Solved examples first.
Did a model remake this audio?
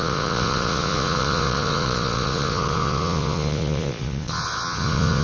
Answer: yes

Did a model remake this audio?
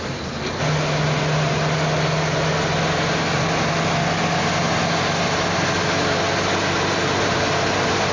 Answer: no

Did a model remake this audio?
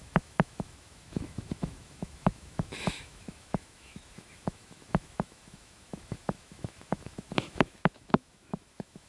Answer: yes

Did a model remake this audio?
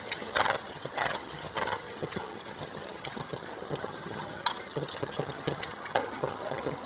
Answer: yes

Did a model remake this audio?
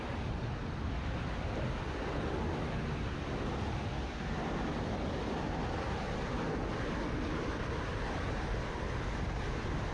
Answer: no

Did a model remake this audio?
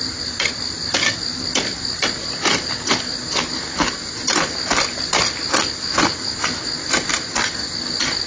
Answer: no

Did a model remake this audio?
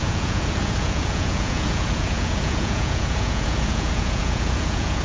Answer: yes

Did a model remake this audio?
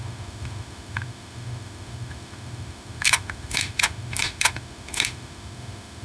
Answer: yes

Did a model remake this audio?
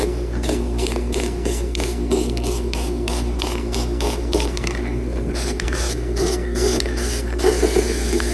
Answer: yes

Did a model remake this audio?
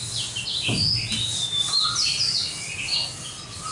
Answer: no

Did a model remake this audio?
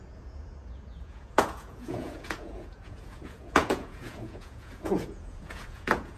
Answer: yes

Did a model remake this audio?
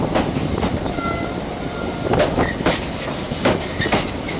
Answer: no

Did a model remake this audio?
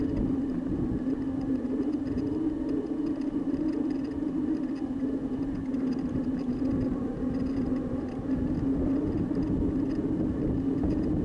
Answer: no